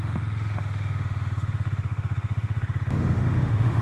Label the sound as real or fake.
fake